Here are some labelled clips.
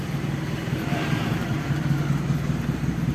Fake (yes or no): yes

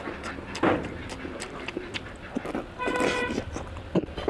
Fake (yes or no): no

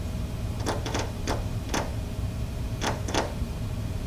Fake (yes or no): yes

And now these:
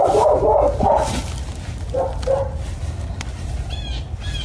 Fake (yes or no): no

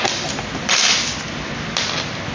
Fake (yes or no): no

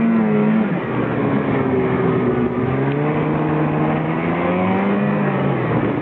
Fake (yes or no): no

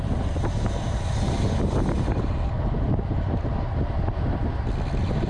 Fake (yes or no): no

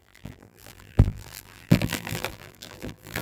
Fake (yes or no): yes